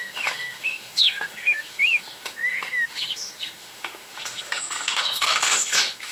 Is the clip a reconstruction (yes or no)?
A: yes